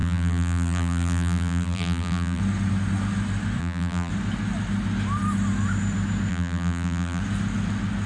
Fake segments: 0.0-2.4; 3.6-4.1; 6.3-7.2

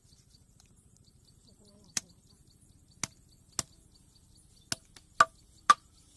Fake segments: 0.0-2.4; 5.7-6.2

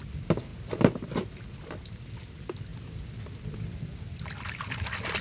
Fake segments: none

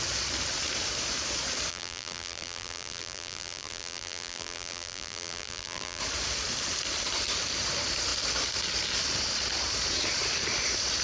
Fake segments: 1.7-6.0